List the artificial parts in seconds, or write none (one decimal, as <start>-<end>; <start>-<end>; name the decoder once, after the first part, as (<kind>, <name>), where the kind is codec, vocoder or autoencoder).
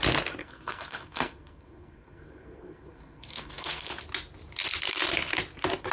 0.4-3.9 (codec, SNAC)